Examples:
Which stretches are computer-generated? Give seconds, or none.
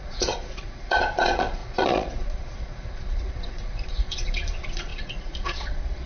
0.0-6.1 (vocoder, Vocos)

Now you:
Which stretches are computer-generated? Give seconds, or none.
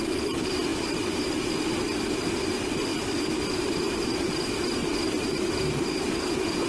0.7-1.4 (vocoder, BigVGAN v2); 2.9-4.0; 4.8-6.3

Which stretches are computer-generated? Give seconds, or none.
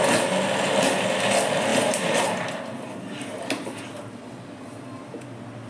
none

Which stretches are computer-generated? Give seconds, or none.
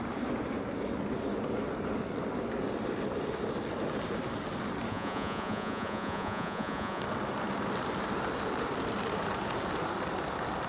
4.9-7.0 (vocoder, Vocos)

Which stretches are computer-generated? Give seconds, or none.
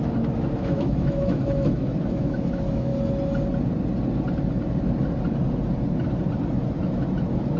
0.0-2.9 (autoencoder, DAC-VAE)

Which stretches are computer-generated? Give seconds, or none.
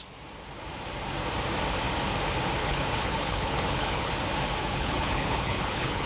2.6-4.1 (codec, HILCodec); 4.6-6.1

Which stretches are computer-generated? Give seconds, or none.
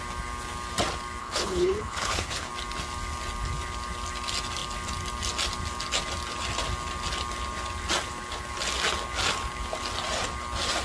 1.2-2.5 (codec, HILCodec)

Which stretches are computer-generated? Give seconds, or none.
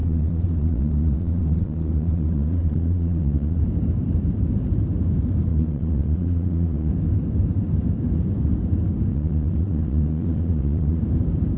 0.0-3.6 (vocoder, Vocos); 5.5-6.9; 9.1-11.0